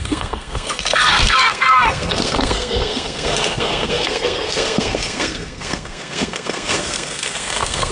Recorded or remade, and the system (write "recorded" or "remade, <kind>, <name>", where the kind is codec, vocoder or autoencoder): remade, codec, SNAC